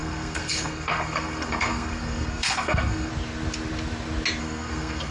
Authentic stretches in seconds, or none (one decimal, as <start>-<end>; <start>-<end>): 3.1-4.4